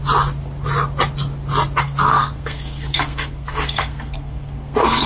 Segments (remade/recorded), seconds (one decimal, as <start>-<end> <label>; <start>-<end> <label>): 0.0-1.8 recorded; 1.8-5.1 remade

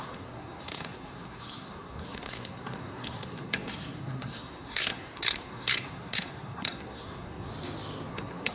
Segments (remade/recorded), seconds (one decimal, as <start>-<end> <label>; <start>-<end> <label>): 0.0-7.5 remade; 7.5-8.1 recorded; 8.1-8.5 remade

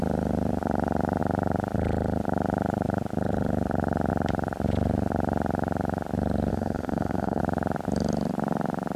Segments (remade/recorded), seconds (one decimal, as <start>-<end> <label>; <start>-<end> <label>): 0.0-6.5 recorded; 6.5-7.4 remade; 7.4-9.0 recorded